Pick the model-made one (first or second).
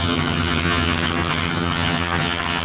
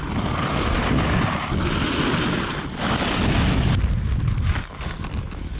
first